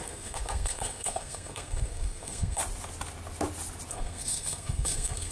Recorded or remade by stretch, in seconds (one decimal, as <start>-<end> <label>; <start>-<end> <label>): 0.0-2.6 remade; 2.6-3.9 recorded; 3.9-5.3 remade